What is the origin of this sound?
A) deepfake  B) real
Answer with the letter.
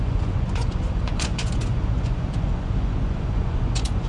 A